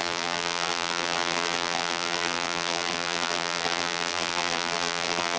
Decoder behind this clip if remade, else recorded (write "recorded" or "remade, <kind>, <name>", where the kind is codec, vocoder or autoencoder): remade, vocoder, BigVGAN v2